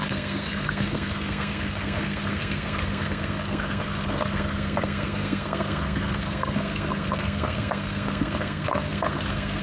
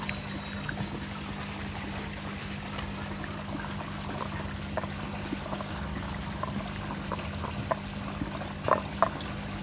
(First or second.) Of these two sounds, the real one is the second